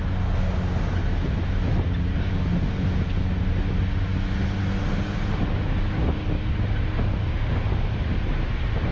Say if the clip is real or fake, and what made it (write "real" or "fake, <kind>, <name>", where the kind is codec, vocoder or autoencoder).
real